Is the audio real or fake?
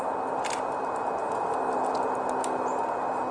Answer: fake